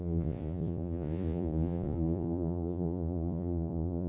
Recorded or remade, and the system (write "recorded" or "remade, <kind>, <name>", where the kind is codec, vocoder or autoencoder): remade, vocoder, Vocos